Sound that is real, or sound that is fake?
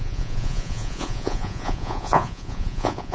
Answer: fake